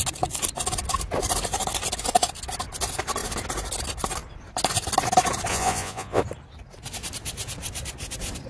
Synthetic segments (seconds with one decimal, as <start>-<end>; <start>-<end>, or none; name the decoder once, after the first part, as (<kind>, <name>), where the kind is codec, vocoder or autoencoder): 5.5-6.2 (vocoder, Vocos)